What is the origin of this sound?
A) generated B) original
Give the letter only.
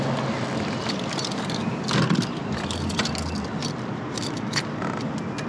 B